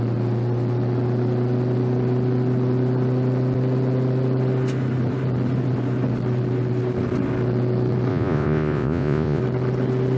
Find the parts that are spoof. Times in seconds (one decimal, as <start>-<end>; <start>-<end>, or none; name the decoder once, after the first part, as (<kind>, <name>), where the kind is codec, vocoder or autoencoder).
8.1-9.4 (vocoder, Vocos)